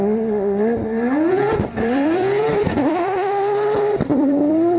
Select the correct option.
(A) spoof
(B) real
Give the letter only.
A